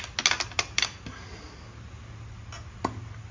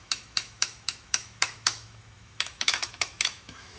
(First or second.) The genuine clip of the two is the first